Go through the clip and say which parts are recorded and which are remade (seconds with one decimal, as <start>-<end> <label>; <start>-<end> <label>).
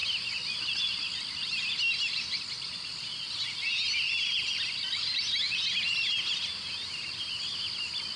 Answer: 0.0-8.2 recorded